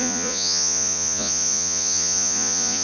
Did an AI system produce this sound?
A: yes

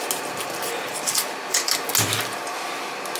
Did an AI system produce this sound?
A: no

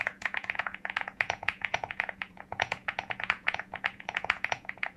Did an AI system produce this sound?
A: yes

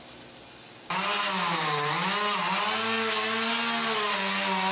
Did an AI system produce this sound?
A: no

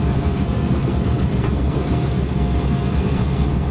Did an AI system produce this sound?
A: yes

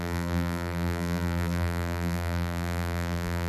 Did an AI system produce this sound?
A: yes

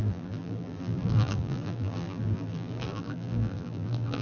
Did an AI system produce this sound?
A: yes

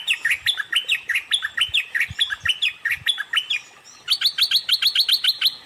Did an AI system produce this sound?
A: no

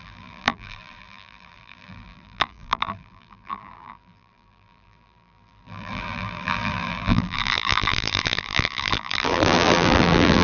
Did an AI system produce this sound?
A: yes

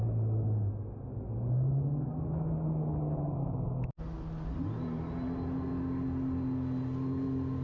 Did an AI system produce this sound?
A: no